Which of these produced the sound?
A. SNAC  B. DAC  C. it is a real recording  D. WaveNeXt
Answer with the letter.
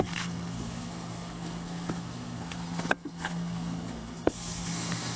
A